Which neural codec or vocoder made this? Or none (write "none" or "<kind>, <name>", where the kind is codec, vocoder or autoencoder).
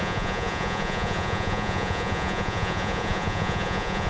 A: vocoder, Vocos